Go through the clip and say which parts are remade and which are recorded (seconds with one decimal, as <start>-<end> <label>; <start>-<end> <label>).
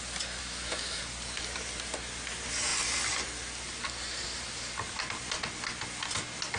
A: 0.0-0.4 recorded; 0.4-1.0 remade; 1.0-6.6 recorded